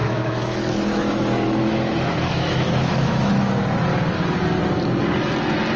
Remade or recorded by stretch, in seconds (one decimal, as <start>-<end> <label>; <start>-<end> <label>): 0.0-3.5 remade; 3.5-5.8 recorded